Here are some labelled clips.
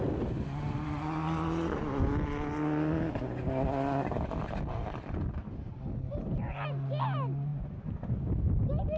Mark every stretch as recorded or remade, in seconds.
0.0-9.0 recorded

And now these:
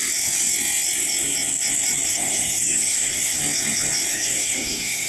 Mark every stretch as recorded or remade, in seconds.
0.0-2.1 recorded; 2.1-3.4 remade; 3.4-4.1 recorded; 4.1-5.1 remade

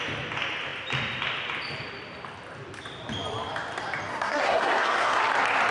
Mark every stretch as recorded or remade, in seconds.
0.0-4.1 recorded; 4.1-5.2 remade; 5.2-5.7 recorded

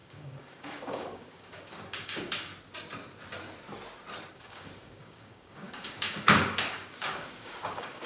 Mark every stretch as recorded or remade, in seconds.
0.0-2.5 remade; 2.5-4.3 recorded; 4.3-8.1 remade

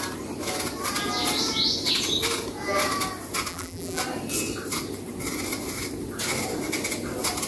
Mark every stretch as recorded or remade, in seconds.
0.0-3.5 recorded; 3.5-4.0 remade; 4.0-7.5 recorded